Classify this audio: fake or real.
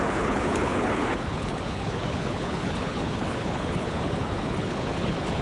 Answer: fake